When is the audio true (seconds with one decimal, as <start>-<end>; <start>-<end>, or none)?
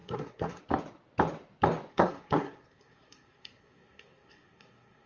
0.6-1.9